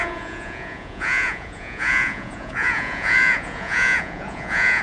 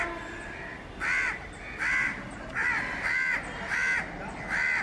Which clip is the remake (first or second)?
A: first